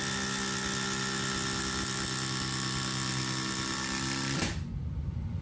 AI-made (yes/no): no